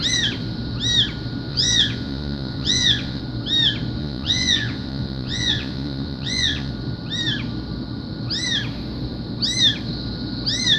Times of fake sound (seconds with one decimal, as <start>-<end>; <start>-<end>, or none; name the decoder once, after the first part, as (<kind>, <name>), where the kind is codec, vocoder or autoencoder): 1.5-3.2 (vocoder, Vocos); 4.0-6.7